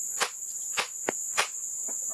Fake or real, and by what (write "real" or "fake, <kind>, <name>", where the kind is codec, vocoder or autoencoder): real